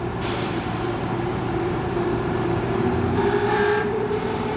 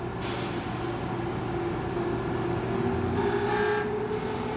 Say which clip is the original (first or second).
second